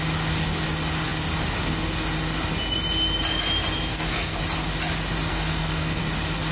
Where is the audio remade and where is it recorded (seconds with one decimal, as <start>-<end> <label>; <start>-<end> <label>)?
0.0-3.9 recorded; 3.9-4.4 remade; 4.4-5.3 recorded; 5.3-6.0 remade; 6.0-6.5 recorded